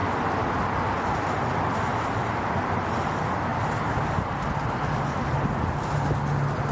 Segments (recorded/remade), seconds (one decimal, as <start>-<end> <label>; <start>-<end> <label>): 0.0-2.4 remade; 2.4-6.7 recorded